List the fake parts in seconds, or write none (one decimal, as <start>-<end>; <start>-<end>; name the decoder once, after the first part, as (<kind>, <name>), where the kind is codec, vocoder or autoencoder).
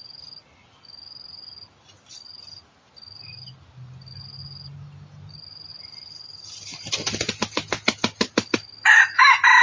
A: none